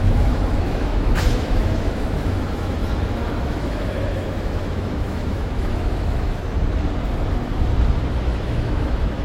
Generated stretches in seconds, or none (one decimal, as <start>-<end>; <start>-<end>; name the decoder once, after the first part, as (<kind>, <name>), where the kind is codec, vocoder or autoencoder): 0.0-2.8 (autoencoder, DAC-VAE); 3.4-6.4; 8.2-9.2